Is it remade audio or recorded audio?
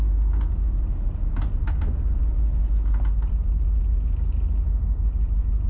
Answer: recorded